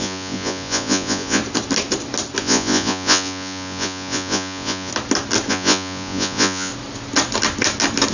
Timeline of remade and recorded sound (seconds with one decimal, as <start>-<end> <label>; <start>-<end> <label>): 0.0-1.4 remade; 1.4-2.4 recorded; 2.4-4.9 remade; 4.9-5.5 recorded; 5.5-6.7 remade; 6.7-8.1 recorded